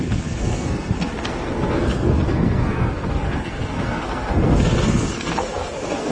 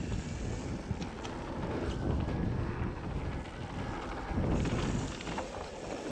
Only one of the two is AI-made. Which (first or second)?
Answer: first